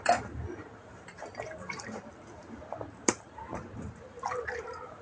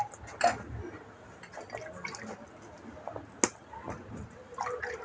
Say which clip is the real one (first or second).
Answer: second